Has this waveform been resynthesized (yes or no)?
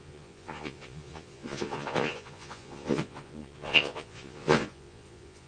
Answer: yes